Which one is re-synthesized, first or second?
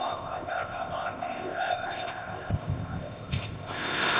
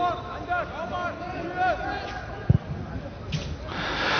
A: first